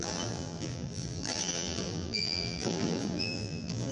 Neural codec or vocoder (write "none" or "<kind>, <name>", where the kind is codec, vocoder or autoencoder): vocoder, BigVGAN v2